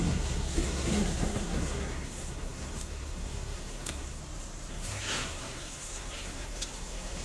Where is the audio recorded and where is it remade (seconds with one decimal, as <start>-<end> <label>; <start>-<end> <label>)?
0.0-4.2 remade; 4.2-4.7 recorded; 4.7-7.2 remade